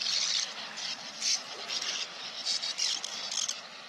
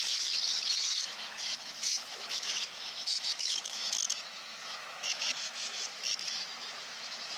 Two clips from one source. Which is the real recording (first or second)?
first